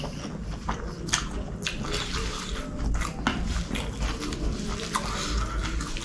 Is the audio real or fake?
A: real